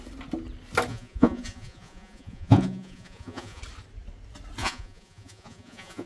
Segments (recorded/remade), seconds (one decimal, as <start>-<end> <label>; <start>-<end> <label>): 0.0-0.9 recorded; 0.9-3.6 remade; 3.6-4.6 recorded; 4.6-6.1 remade